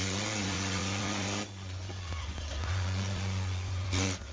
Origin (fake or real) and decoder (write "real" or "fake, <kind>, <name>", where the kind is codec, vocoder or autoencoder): fake, vocoder, Vocos